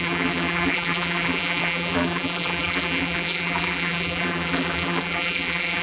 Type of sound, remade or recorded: remade